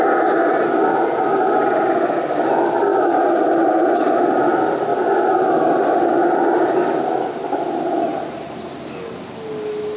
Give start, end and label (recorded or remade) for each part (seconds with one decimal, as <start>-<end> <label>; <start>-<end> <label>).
0.0-10.0 recorded